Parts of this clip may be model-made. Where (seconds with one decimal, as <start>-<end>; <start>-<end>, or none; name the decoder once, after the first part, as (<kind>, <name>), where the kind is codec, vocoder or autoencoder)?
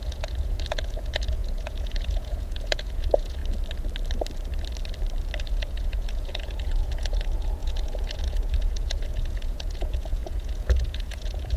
0.0-3.4 (vocoder, Vocos); 5.4-11.6